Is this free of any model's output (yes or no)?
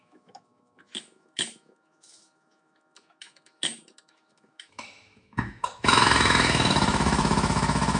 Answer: no